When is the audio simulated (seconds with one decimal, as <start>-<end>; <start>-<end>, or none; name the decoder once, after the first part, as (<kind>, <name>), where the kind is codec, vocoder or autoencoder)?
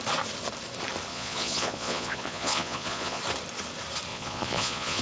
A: 1.1-3.2 (vocoder, Vocos); 4.1-5.0